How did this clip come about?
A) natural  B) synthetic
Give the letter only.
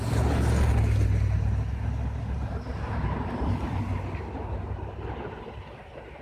A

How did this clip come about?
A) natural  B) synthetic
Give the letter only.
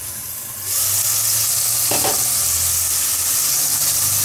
A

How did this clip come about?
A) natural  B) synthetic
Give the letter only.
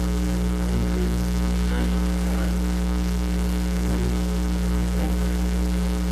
B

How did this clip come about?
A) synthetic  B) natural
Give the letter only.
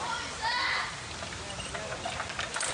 B